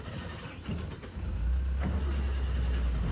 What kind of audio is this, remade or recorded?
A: recorded